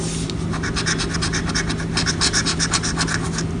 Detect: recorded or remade recorded